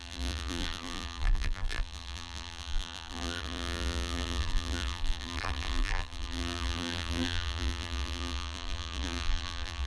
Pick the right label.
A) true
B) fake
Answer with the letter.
B